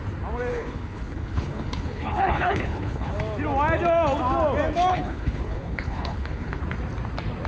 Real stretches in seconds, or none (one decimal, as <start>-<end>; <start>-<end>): 0.0-0.5; 3.1-4.9; 6.6-7.5